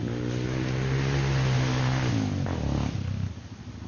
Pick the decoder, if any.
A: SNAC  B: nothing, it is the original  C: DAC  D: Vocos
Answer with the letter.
B